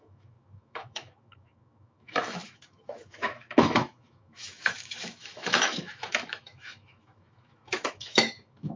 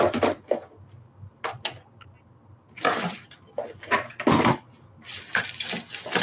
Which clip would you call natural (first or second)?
second